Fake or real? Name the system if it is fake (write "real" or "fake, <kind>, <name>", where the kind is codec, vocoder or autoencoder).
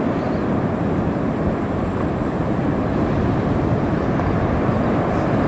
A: real